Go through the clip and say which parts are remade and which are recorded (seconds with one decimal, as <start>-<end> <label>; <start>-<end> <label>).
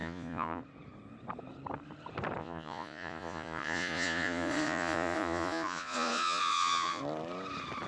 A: 0.0-0.6 remade; 0.6-2.4 recorded; 2.4-7.0 remade; 7.0-7.9 recorded